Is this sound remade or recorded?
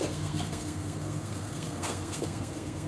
remade